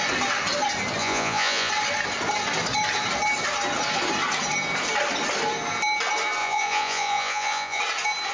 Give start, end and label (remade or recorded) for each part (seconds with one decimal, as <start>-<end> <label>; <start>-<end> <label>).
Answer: 0.0-1.0 recorded; 1.0-1.7 remade; 1.7-6.4 recorded; 6.4-7.8 remade; 7.8-8.3 recorded